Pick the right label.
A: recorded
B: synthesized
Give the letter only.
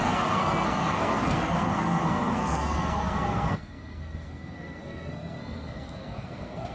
B